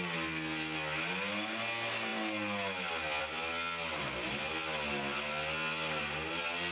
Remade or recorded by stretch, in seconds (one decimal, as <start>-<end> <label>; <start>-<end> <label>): 0.0-6.7 recorded